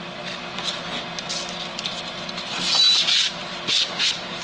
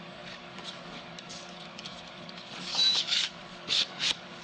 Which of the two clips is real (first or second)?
first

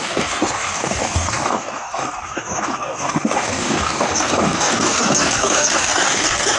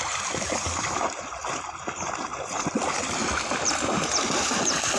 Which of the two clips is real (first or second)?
second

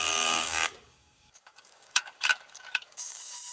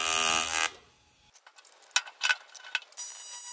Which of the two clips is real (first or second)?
second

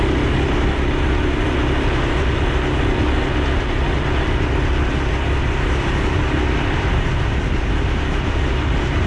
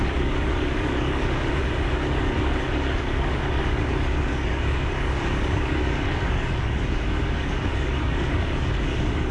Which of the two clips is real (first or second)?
first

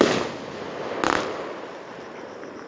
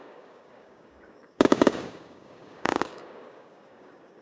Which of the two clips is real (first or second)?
first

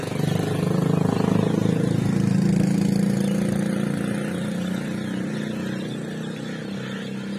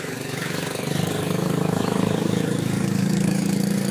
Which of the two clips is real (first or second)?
first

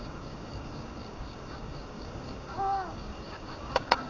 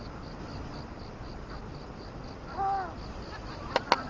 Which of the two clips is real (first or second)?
second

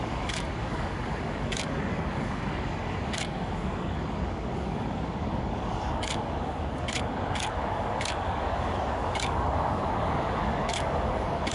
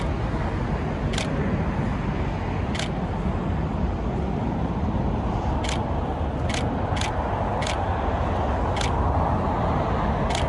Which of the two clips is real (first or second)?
second